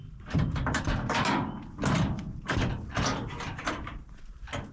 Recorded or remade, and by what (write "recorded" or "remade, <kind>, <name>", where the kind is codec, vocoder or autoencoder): recorded